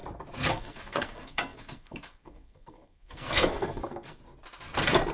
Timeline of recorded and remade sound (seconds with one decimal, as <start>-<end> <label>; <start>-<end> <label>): 0.0-0.5 recorded; 0.5-4.2 remade; 4.2-5.1 recorded